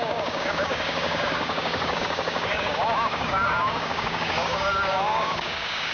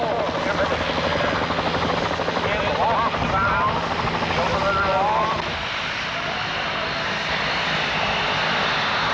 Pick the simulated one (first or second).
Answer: first